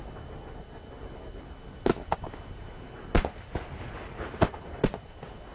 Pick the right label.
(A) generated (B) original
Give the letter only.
B